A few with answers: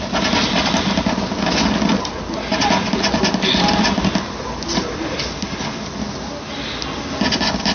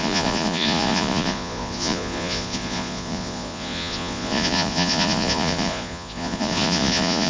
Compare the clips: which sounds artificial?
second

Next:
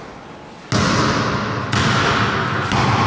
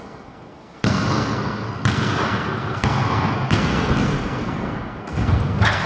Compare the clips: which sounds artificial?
second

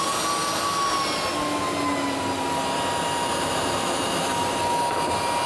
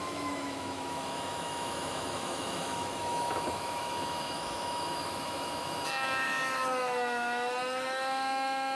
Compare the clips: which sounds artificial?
second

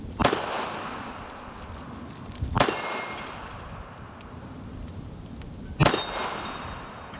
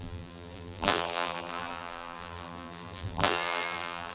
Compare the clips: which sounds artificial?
second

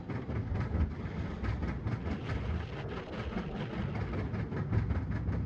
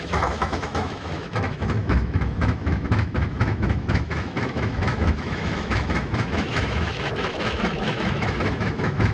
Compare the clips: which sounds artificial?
second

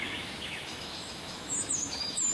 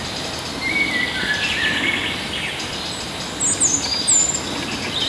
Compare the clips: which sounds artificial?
first